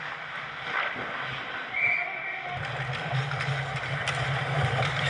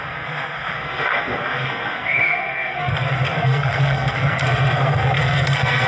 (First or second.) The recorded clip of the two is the first